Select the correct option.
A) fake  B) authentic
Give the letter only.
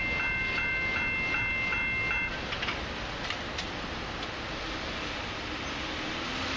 B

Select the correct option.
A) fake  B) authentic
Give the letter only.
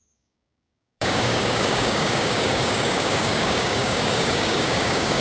A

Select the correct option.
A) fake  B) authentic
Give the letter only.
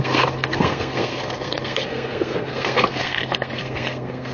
A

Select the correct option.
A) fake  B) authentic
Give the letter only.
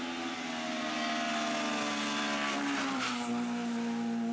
B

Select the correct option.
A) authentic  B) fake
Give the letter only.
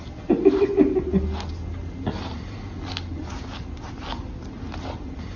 A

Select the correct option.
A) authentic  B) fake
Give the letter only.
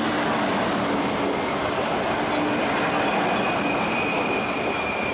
A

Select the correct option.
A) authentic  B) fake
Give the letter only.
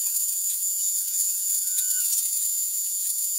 B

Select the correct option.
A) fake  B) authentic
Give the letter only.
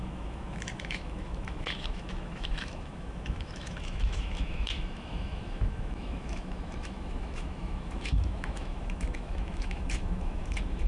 A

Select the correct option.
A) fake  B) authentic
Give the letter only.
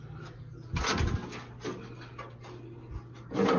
B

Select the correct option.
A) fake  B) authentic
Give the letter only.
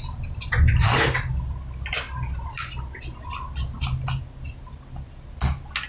B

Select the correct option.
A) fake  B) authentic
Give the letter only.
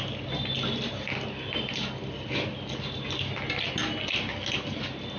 B